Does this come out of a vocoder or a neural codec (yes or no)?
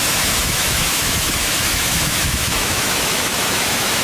yes